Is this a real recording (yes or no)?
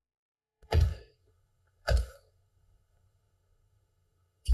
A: no